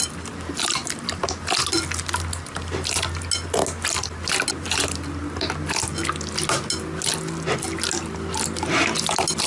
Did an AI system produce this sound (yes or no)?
no